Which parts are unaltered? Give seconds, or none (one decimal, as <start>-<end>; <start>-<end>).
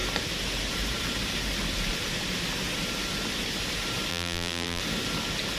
0.0-4.1; 4.8-5.6